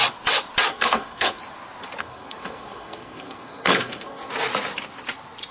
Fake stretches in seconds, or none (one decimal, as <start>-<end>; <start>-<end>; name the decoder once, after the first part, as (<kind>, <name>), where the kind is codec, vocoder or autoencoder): 0.7-1.4 (codec, SNAC); 2.0-4.3